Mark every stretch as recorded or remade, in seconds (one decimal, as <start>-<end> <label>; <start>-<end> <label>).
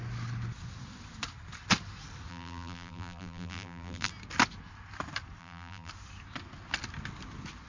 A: 0.0-2.3 recorded; 2.3-4.1 remade; 4.1-5.4 recorded; 5.4-5.9 remade; 5.9-7.7 recorded